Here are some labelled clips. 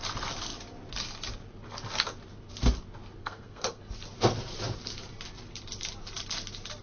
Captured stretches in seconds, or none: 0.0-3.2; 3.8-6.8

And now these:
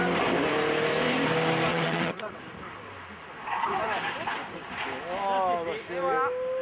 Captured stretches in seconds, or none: 0.0-1.7; 2.4-6.6

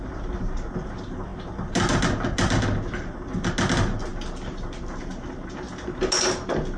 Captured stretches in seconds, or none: 0.0-6.8

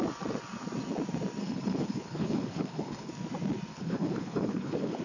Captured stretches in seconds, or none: 0.0-1.4; 3.1-3.7

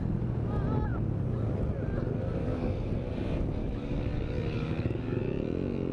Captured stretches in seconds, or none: 0.0-2.4; 2.9-3.6; 5.2-5.9